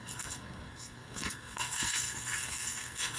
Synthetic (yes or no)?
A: yes